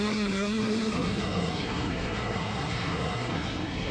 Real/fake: fake